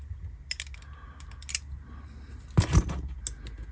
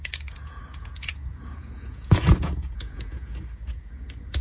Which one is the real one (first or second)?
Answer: first